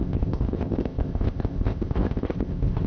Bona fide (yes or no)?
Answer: no